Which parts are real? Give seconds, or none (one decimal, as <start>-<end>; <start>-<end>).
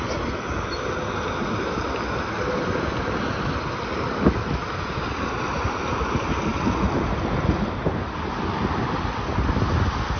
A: 0.0-10.2